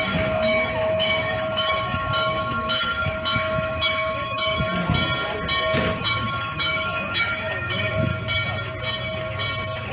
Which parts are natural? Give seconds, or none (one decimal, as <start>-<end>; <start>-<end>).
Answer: 4.6-6.0; 8.1-9.9